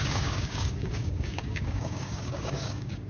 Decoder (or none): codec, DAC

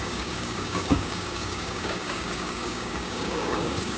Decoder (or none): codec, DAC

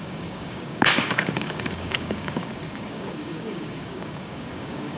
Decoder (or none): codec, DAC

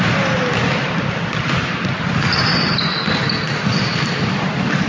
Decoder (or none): none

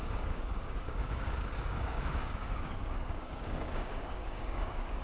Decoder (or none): codec, DAC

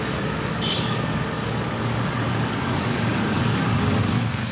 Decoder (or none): codec, DAC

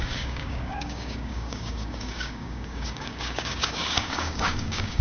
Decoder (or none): codec, DAC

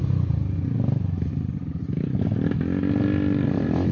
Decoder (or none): none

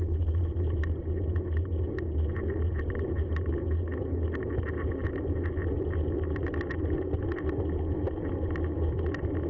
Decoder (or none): none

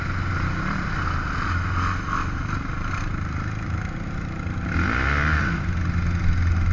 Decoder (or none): none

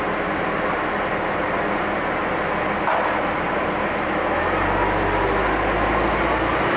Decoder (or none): none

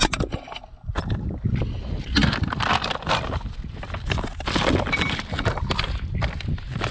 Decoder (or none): none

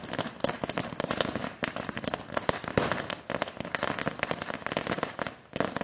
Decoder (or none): none